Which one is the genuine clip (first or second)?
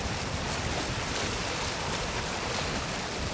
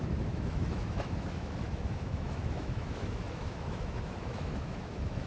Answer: first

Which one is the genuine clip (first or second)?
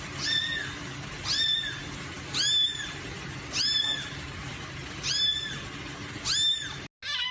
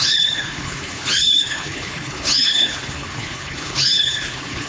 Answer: first